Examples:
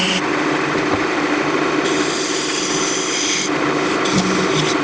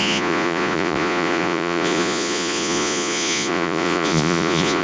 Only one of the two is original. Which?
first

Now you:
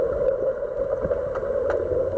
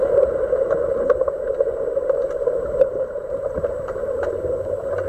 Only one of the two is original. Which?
first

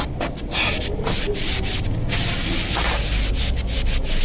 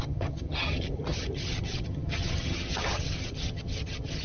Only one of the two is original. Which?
first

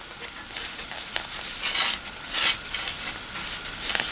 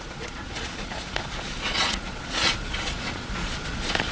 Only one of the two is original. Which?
first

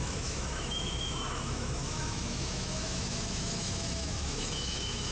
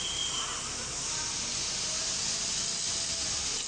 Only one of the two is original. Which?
second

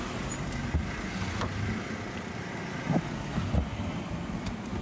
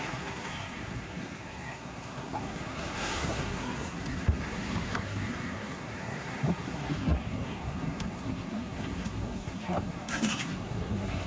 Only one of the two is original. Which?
first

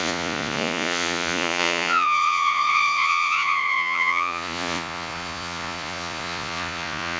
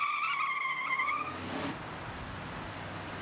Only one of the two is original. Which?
second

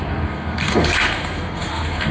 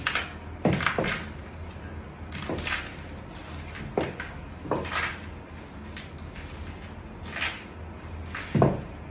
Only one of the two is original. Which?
second